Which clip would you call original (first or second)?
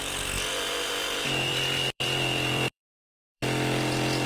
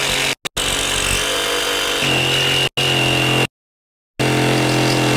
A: second